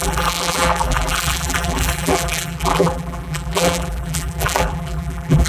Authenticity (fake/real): fake